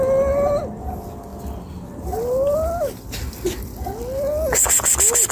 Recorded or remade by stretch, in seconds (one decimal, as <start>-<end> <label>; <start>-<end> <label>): 0.0-5.3 recorded